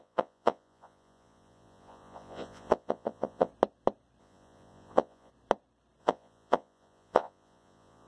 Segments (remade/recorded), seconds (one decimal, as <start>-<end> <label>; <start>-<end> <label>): 0.0-3.5 remade; 3.5-4.2 recorded; 4.2-5.3 remade; 5.3-6.0 recorded; 6.0-8.1 remade